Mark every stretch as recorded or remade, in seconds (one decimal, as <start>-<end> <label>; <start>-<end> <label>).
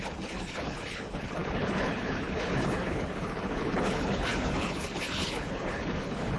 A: 0.0-6.4 remade